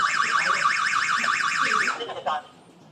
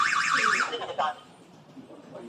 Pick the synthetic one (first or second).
second